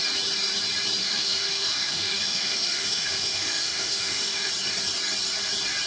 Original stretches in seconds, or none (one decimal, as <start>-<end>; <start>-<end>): 0.0-1.0; 4.5-5.9